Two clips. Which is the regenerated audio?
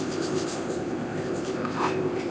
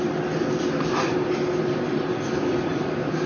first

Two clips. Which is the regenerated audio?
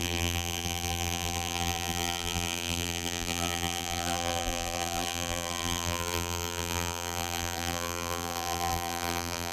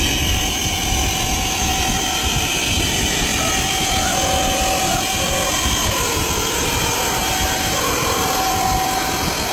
first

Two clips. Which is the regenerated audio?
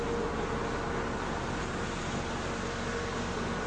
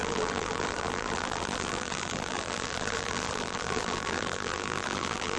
second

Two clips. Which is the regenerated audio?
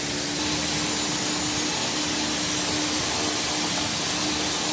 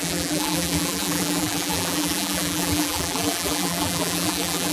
second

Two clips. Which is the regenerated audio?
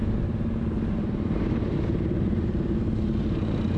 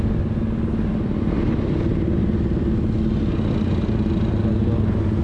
first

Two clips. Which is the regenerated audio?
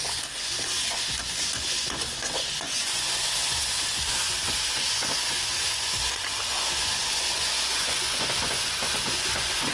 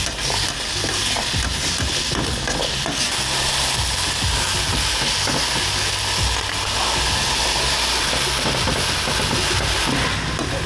first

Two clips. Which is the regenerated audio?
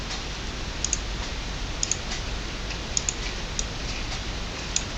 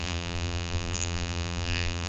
second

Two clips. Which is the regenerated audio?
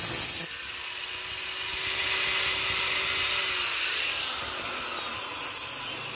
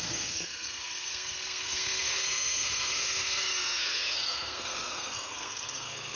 second